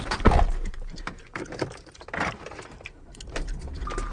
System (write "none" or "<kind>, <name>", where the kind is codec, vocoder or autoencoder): vocoder, BigVGAN v2